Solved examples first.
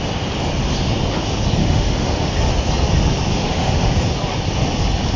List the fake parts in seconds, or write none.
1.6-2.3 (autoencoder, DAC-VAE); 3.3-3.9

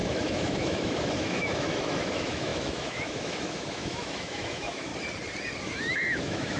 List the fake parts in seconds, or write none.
0.0-4.9 (autoencoder, DAC-VAE); 5.6-6.6

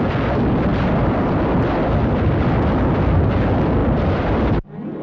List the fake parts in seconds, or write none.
none

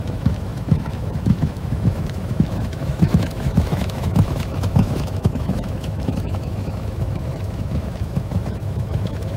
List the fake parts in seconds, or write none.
0.0-9.4 (autoencoder, DAC-VAE)

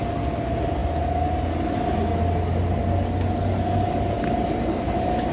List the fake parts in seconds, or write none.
none